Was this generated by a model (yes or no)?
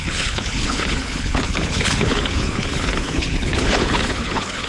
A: yes